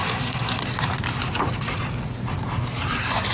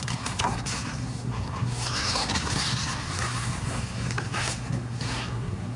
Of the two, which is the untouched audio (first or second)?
first